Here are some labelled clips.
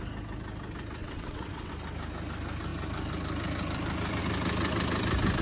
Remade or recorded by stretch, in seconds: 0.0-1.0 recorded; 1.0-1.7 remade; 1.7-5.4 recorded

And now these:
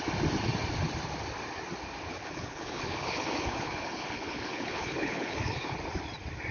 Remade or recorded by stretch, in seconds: 0.0-2.1 recorded; 2.1-5.8 remade; 5.8-6.5 recorded

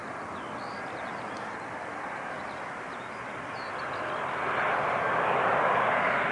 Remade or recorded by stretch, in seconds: 0.0-6.3 recorded

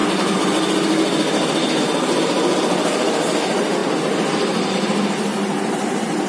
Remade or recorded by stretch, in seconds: 0.0-6.3 recorded

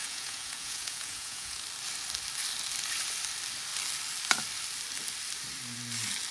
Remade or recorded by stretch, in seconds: 0.0-1.6 remade; 1.6-6.3 recorded